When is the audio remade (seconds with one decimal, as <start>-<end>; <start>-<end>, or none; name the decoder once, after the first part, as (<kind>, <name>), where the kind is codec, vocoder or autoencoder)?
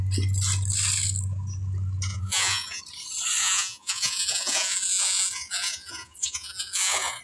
2.1-2.8 (vocoder, Vocos); 3.4-7.2